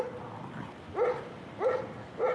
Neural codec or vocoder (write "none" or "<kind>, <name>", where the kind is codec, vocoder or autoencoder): none